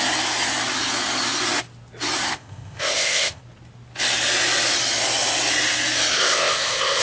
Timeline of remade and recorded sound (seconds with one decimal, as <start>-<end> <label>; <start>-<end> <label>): 0.0-2.3 recorded; 2.3-3.4 remade; 3.4-6.1 recorded; 6.1-7.0 remade